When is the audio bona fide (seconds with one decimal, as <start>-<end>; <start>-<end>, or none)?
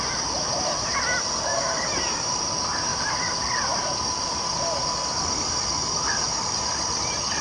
0.0-1.5; 2.4-2.9; 3.6-7.4